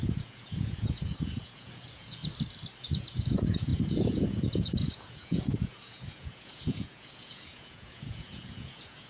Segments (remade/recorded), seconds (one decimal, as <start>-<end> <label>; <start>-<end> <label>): 0.0-2.2 remade; 2.2-2.8 recorded; 2.8-9.1 remade